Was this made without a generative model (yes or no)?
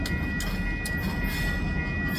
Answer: yes